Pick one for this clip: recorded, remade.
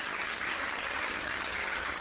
remade